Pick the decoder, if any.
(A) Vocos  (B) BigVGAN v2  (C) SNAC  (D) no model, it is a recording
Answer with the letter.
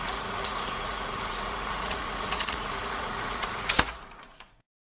A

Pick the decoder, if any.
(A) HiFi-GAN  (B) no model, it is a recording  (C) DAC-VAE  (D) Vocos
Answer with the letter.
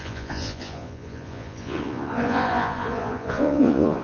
D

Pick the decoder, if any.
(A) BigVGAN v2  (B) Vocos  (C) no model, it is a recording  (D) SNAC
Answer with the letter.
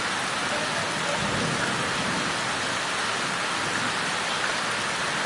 C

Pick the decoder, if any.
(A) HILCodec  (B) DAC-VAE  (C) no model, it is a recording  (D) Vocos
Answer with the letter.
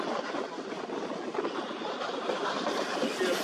C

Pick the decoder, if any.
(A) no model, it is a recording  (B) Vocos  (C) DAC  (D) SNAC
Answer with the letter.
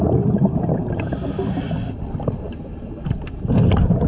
A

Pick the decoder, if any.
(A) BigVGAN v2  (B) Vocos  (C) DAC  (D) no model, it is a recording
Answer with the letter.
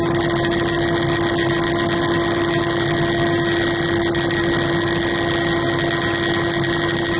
D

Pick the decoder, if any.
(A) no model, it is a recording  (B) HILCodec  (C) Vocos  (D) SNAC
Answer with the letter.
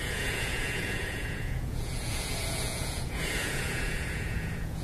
C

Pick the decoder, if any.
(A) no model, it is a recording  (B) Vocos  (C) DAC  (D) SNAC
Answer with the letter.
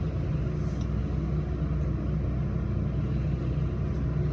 A